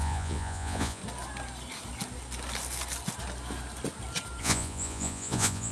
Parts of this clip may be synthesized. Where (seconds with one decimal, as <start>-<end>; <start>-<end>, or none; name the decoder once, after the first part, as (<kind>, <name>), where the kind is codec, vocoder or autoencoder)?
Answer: 0.0-1.0 (vocoder, Vocos); 4.4-5.7